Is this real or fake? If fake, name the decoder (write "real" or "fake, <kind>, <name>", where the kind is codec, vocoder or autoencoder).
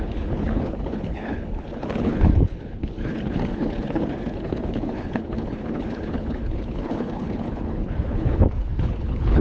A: fake, codec, HILCodec